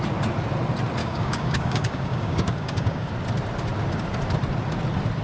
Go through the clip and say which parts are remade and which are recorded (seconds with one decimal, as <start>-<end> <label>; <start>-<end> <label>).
0.0-1.0 recorded; 1.0-3.1 remade; 3.1-5.2 recorded